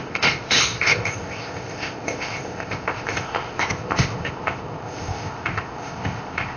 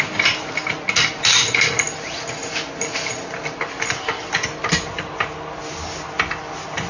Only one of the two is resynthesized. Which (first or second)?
first